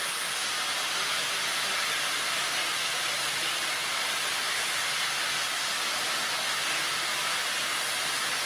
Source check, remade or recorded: recorded